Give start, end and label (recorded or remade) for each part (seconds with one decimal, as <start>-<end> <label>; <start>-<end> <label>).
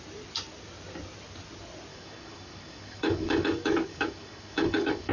0.0-1.9 recorded; 1.9-5.1 remade